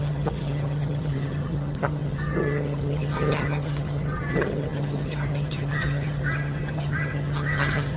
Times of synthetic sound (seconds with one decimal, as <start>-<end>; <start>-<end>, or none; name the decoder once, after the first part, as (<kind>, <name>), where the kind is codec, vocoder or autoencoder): 0.0-8.0 (vocoder, HiFi-GAN)